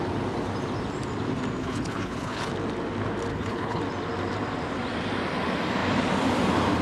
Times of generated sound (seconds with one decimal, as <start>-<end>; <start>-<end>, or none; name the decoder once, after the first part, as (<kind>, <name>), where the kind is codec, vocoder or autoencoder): 1.6-2.5 (codec, HILCodec); 3.3-3.8